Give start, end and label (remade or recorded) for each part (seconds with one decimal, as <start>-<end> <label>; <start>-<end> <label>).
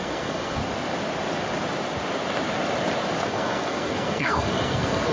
0.0-0.6 remade; 0.6-3.3 recorded; 3.3-5.1 remade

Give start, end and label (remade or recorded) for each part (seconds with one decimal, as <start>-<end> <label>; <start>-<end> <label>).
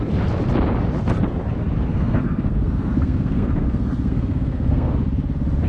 0.0-1.9 recorded; 1.9-4.9 remade; 4.9-5.7 recorded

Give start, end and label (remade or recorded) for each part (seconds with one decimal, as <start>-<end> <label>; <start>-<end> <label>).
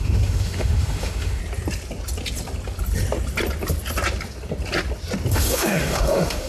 0.0-1.4 remade; 1.4-5.3 recorded; 5.3-6.5 remade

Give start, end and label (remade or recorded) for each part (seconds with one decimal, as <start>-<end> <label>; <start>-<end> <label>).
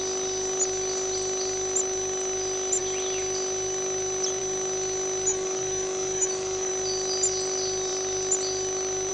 0.0-5.3 recorded; 5.3-6.7 remade; 6.7-9.1 recorded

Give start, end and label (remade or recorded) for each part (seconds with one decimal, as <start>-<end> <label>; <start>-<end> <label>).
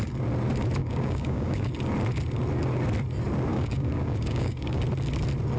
0.0-0.8 recorded; 0.8-1.7 remade; 1.7-3.5 recorded; 3.5-4.8 remade; 4.8-5.6 recorded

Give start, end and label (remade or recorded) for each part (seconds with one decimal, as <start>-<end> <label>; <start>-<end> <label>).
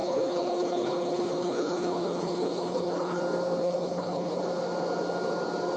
0.0-3.2 remade; 3.2-3.6 recorded; 3.6-4.4 remade; 4.4-5.8 recorded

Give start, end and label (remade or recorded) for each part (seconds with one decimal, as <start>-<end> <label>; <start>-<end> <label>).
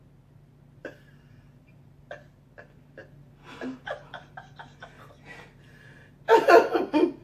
0.0-7.2 recorded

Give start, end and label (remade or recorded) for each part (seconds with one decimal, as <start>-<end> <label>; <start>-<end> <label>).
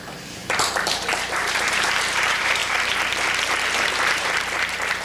0.0-2.6 remade; 2.6-3.9 recorded; 3.9-5.0 remade